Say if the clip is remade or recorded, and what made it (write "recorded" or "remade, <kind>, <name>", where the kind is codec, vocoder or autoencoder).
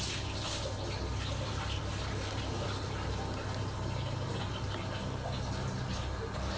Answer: recorded